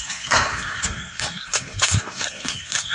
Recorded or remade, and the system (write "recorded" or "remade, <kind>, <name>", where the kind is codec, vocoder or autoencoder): remade, codec, SNAC